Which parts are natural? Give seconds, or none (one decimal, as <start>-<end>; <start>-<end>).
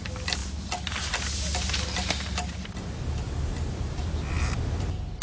0.0-5.2